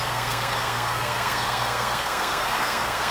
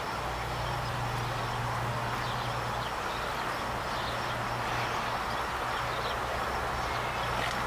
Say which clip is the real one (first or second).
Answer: second